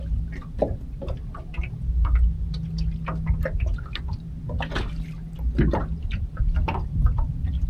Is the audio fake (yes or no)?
no